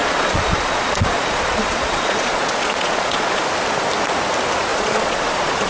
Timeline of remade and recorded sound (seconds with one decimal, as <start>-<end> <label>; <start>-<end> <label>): 0.0-3.4 remade; 3.4-4.7 recorded; 4.7-5.7 remade